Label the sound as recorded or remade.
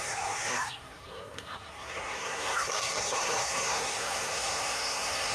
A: remade